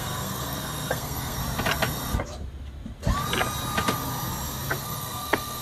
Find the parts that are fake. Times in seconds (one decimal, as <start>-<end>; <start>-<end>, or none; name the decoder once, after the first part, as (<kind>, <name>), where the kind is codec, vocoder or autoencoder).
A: 0.0-1.4 (codec, SNAC); 4.8-5.6